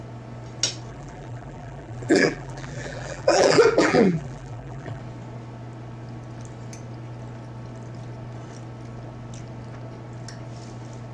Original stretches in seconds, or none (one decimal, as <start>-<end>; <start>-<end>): 0.0-0.9; 5.0-11.1